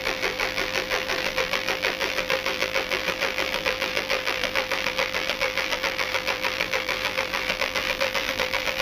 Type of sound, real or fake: fake